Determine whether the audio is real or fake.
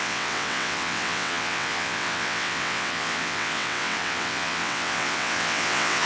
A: fake